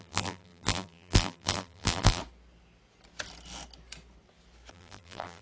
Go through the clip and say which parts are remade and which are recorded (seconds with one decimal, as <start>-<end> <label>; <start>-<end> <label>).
0.0-2.2 remade; 2.2-4.7 recorded; 4.7-5.4 remade